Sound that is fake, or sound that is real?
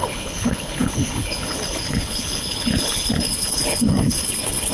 fake